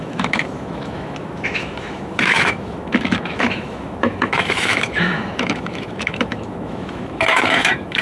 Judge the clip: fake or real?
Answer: fake